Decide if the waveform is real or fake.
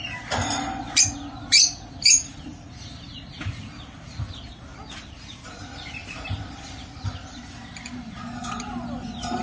fake